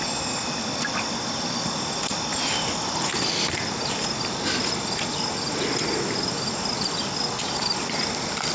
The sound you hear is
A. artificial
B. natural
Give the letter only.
B